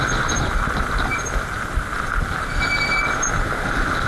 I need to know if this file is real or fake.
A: real